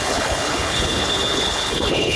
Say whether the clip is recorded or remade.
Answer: remade